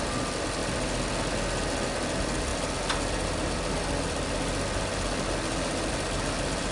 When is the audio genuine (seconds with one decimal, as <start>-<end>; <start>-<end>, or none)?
0.0-6.7